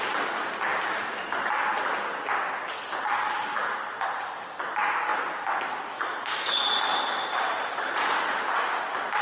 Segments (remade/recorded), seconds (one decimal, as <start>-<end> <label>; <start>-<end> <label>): 0.0-0.7 recorded; 0.7-1.5 remade; 1.5-3.6 recorded; 3.6-4.6 remade; 4.6-5.1 recorded; 5.1-5.6 remade; 5.6-9.2 recorded